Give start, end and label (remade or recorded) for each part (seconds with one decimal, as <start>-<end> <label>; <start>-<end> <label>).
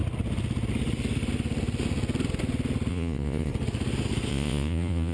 0.0-2.9 recorded; 2.9-3.5 remade; 3.5-4.3 recorded; 4.3-5.1 remade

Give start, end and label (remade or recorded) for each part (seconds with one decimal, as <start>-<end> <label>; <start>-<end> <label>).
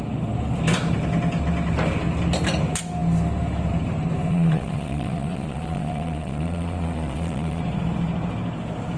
0.0-4.3 recorded; 4.3-7.6 remade; 7.6-9.0 recorded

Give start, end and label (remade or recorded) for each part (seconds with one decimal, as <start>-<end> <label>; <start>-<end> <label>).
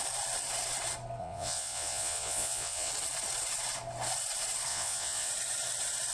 0.0-1.2 recorded; 1.2-2.9 remade; 2.9-4.7 recorded; 4.7-5.3 remade; 5.3-6.1 recorded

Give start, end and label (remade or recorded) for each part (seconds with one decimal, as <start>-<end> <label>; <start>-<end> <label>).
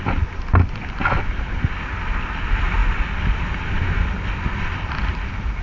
0.0-5.6 recorded